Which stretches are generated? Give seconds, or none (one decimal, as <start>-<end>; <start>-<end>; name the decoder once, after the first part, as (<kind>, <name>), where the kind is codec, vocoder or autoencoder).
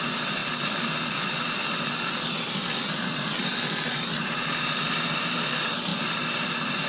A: none